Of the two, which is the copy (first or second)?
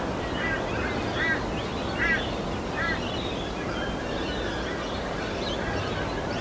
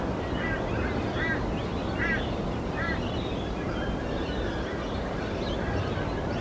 second